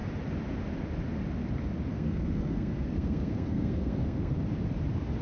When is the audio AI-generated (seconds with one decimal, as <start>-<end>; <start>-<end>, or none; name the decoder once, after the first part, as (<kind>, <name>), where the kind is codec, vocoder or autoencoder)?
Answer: 1.9-4.3 (codec, SNAC)